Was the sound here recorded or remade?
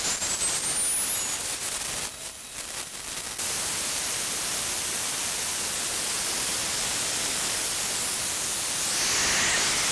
recorded